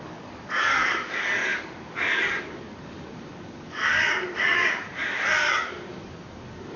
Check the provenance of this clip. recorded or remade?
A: remade